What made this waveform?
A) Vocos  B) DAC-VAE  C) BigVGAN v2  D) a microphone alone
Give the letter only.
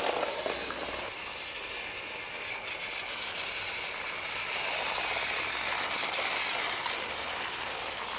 D